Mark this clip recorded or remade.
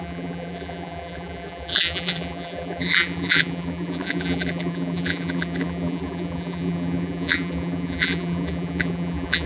remade